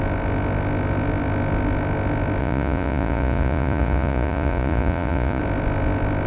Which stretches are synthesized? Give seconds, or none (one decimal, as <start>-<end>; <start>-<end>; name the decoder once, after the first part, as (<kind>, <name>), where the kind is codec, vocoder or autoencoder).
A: 2.4-5.4 (vocoder, Vocos)